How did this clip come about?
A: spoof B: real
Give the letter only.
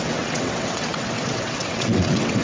A